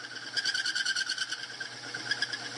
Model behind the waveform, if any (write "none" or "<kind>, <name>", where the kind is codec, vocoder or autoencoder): none